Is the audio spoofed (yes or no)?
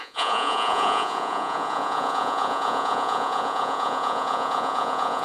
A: yes